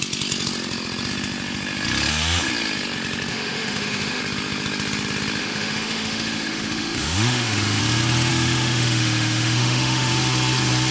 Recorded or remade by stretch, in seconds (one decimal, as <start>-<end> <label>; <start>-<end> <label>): 0.0-3.3 recorded; 3.3-4.2 remade; 4.2-5.4 recorded; 5.4-7.8 remade; 7.8-8.3 recorded; 8.3-10.1 remade; 10.1-10.9 recorded